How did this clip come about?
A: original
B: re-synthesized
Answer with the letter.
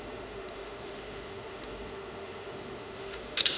B